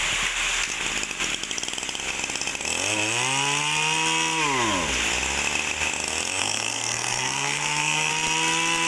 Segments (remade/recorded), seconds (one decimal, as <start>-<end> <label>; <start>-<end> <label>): 0.0-6.4 recorded; 6.4-8.1 remade; 8.1-8.9 recorded

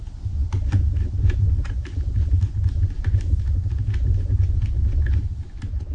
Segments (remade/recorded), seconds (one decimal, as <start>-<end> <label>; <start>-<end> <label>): 0.0-5.9 recorded

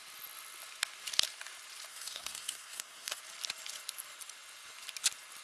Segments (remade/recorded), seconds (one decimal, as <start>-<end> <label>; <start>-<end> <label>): 0.0-1.9 recorded; 1.9-3.2 remade; 3.2-5.4 recorded

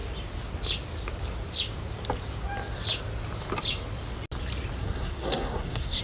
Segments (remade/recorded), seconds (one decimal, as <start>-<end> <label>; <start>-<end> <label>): 0.0-4.8 recorded; 4.8-6.0 remade

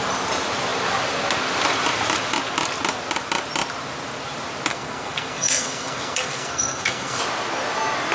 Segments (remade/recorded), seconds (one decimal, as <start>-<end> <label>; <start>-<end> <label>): 0.0-4.7 recorded; 4.7-7.2 remade; 7.2-8.1 recorded

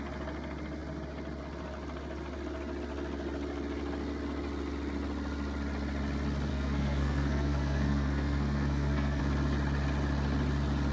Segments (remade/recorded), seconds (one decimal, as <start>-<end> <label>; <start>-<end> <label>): 0.0-6.5 recorded; 6.5-9.2 remade; 9.2-10.9 recorded